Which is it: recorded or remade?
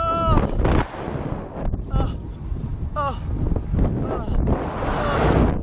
recorded